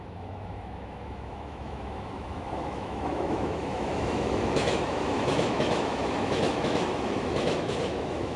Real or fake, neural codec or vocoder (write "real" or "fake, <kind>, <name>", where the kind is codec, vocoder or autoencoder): fake, autoencoder, DAC-VAE